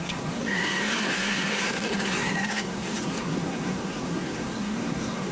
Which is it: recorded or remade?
remade